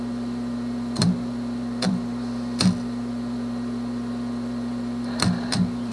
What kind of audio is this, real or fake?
fake